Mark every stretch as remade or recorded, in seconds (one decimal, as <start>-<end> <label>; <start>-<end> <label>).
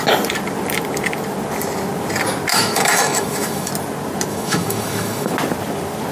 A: 0.0-2.5 recorded; 2.5-3.7 remade; 3.7-4.3 recorded; 4.3-5.3 remade; 5.3-6.1 recorded